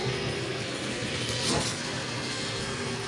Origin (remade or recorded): remade